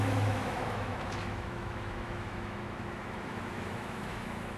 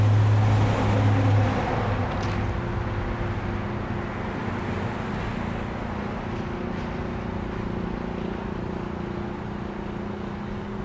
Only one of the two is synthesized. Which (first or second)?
first